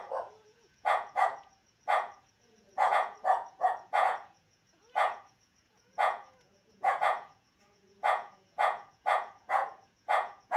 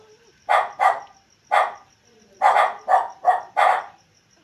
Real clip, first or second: second